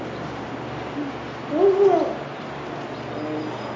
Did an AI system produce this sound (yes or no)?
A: no